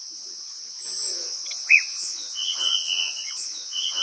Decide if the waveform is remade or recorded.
remade